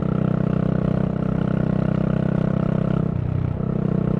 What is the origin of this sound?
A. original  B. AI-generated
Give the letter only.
A